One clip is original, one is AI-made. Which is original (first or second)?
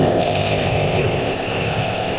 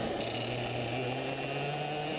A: second